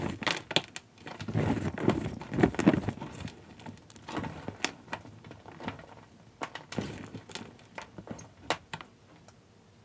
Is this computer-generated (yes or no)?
no